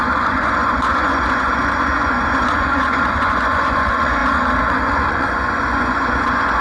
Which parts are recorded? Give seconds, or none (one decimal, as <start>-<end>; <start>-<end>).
4.2-4.8